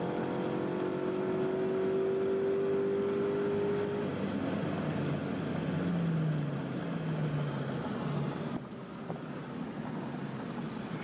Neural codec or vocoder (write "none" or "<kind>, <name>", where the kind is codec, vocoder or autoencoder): none